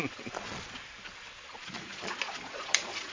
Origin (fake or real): fake